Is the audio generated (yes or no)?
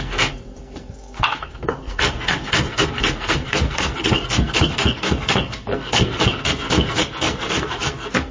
yes